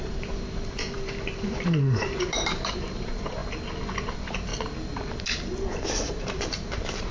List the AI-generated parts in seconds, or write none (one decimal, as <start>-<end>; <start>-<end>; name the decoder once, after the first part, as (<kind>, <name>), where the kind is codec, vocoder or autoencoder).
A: 0.0-3.4 (vocoder, BigVGAN v2); 4.1-4.5; 5.9-7.1